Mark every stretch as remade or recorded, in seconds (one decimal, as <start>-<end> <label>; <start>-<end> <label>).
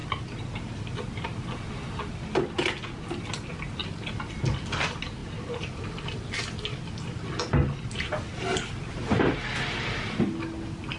0.0-11.0 recorded